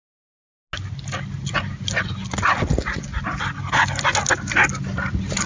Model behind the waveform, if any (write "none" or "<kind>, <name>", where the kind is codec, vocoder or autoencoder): none